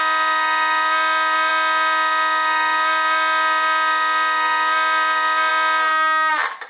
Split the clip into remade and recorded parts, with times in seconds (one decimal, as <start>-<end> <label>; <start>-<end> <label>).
0.0-6.7 recorded